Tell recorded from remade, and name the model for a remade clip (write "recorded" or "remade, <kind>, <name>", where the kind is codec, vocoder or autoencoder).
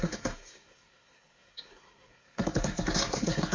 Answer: remade, codec, SNAC